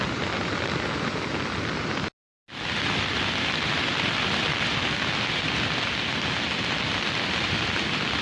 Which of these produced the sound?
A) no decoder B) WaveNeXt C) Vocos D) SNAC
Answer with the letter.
A